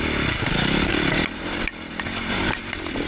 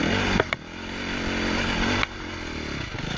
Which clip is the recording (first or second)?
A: second